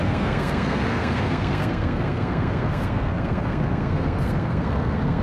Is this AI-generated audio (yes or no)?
yes